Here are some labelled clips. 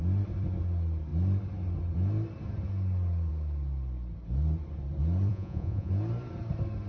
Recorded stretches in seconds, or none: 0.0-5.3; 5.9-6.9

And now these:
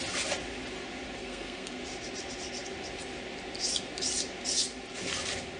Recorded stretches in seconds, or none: 0.0-1.2; 1.8-5.6

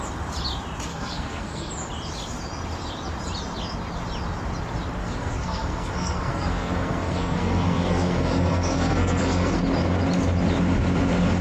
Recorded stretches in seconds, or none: 0.0-0.9; 1.7-5.0; 9.6-11.4